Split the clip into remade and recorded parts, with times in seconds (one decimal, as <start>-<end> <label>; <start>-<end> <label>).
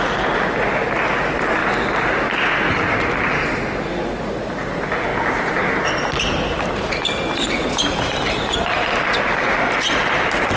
0.0-10.6 recorded